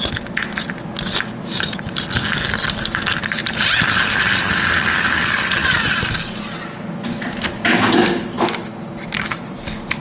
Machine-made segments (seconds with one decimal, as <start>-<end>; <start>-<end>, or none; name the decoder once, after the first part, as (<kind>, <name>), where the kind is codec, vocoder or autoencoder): 3.4-4.4 (vocoder, BigVGAN v2)